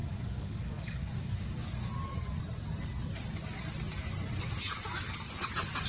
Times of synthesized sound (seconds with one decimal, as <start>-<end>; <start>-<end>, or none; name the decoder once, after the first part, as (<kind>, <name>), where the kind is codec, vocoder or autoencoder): 0.0-1.9 (codec, DAC)